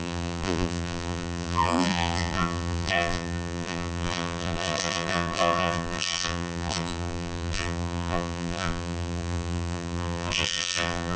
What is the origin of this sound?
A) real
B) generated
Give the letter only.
B